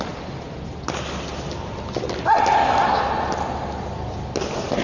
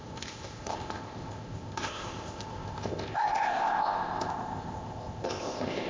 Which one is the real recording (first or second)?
first